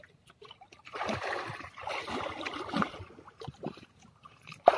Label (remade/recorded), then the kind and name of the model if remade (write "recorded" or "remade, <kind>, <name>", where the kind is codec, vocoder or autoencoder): recorded